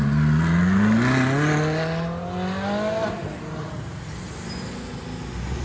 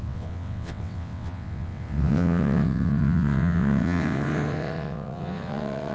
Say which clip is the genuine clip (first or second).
first